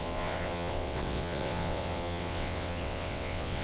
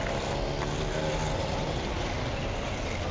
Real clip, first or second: second